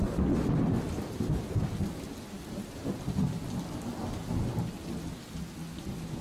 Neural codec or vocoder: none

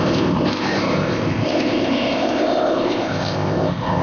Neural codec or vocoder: codec, ZipCodec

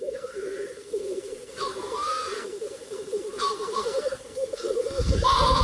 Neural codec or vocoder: codec, SNAC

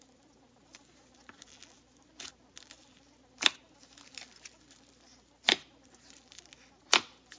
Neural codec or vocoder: none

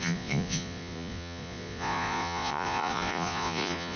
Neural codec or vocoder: vocoder, Vocos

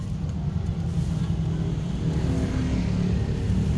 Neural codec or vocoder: none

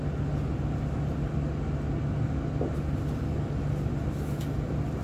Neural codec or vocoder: none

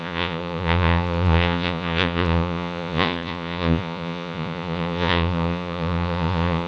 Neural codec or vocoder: vocoder, Vocos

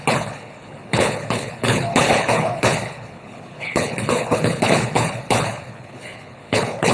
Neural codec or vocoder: codec, HILCodec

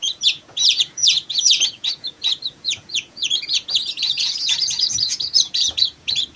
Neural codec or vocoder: vocoder, Vocos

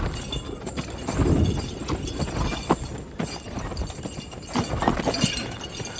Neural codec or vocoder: none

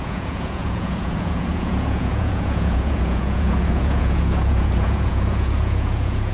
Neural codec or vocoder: vocoder, Vocos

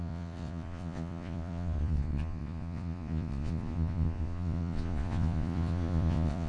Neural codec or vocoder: vocoder, Vocos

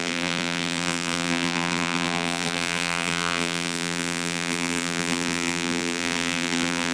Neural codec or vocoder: vocoder, BigVGAN v2